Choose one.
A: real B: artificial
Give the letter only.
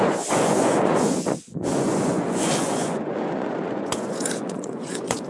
B